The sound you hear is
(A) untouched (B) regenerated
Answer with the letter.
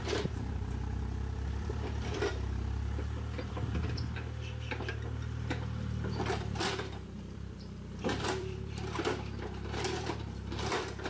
B